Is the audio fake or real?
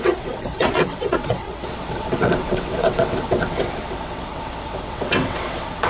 fake